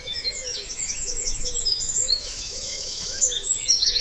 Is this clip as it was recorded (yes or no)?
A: no